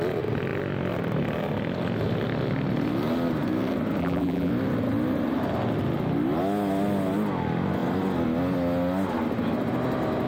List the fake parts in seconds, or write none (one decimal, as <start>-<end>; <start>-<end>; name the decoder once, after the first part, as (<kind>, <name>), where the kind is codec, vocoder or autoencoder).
4.0-4.5 (vocoder, BigVGAN v2)